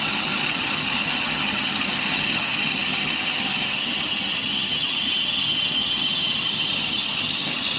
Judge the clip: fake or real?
fake